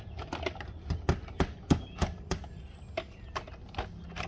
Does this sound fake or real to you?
real